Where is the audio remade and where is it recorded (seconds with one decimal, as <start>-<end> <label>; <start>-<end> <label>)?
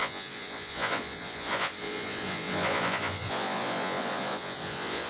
0.0-5.1 remade